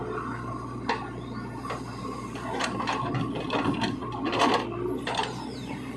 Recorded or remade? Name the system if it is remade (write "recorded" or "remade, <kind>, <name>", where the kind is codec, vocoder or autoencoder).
recorded